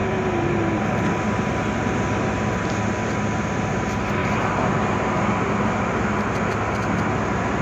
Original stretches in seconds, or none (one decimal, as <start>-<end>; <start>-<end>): 0.0-7.6